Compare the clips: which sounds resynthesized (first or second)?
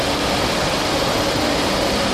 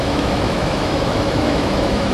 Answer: second